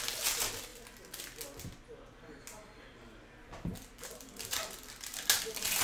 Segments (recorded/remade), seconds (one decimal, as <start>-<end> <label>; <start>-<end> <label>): 0.0-5.8 recorded